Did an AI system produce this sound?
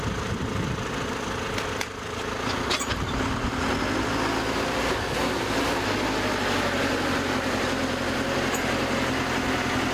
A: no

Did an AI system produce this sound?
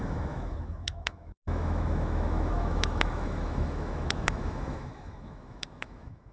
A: yes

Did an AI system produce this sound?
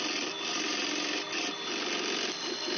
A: no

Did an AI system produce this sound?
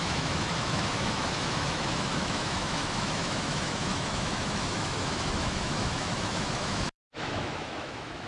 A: yes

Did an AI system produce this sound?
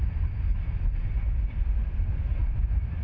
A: no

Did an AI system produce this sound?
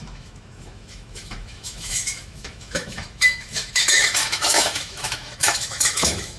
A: yes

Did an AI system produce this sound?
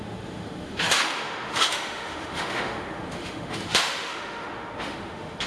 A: yes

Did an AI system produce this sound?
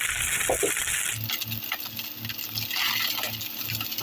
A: no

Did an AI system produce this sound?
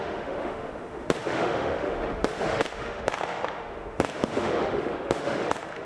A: yes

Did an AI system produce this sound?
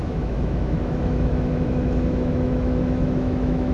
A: yes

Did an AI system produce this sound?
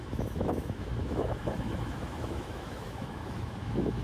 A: yes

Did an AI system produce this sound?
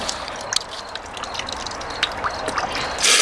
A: no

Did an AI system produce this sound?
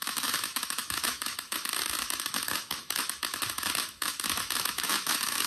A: yes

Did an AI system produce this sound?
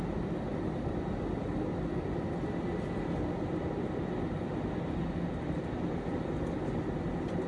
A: no